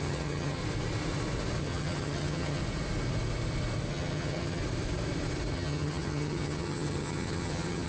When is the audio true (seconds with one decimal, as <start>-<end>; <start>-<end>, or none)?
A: 0.6-1.6; 2.6-3.9; 4.6-5.5